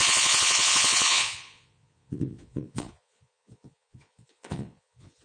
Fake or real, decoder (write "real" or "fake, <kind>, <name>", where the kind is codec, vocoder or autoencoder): fake, vocoder, Vocos